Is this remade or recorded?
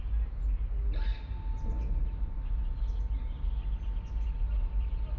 recorded